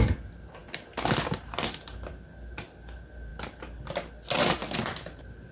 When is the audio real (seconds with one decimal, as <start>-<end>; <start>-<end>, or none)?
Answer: 0.0-5.5